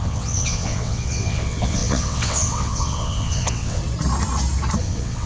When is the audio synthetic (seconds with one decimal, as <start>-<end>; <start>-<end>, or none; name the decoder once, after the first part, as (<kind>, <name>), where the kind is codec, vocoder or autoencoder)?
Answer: 0.0-3.8 (vocoder, WaveNeXt); 4.8-5.3